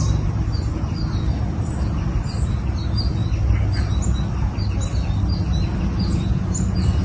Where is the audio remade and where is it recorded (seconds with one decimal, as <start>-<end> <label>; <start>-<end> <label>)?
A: 0.0-7.0 recorded